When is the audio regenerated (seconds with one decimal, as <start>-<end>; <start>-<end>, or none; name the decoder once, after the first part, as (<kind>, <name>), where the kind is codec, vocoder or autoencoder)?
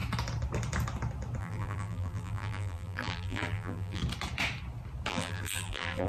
1.4-4.0 (vocoder, BigVGAN v2); 5.1-6.1